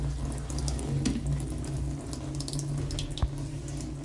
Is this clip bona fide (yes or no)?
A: yes